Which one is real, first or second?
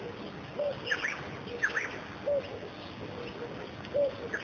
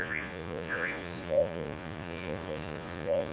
first